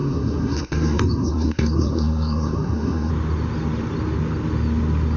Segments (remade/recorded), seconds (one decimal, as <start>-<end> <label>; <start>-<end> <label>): 0.0-3.1 remade; 3.1-5.2 recorded